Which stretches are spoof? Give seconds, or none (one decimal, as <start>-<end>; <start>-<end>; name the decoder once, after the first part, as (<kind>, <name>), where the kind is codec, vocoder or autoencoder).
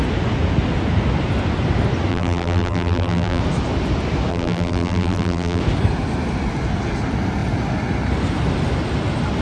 2.1-3.4 (vocoder, BigVGAN v2); 4.3-5.6